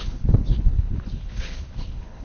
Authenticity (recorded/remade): remade